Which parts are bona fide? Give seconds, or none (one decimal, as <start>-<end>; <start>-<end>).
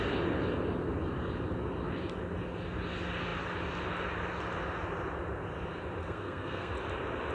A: 0.0-6.0; 6.7-7.3